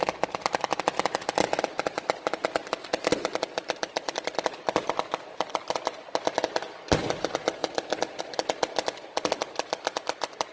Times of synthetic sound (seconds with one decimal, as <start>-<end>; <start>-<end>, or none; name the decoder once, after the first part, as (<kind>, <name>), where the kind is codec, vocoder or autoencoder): 2.6-5.7 (vocoder, BigVGAN v2); 7.6-8.2